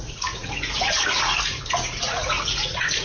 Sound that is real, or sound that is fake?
fake